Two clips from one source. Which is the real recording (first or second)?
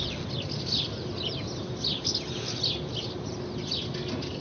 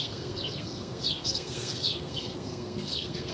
first